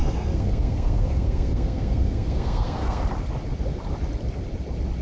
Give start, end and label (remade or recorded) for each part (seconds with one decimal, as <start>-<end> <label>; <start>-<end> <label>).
0.0-3.0 remade; 3.0-5.0 recorded